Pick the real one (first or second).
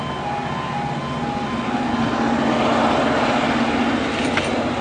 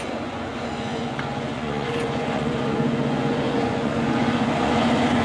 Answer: first